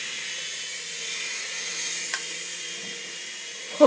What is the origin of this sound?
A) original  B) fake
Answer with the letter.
B